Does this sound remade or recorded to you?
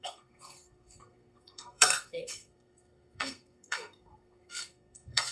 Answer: remade